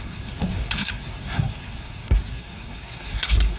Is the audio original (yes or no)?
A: no